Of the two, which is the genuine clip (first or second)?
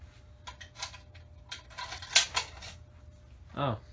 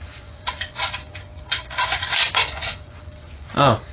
first